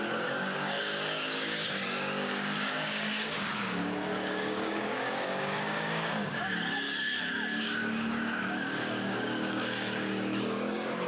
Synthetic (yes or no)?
yes